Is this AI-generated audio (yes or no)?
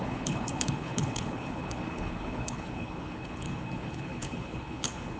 yes